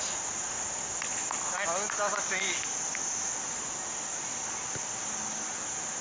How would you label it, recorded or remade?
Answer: recorded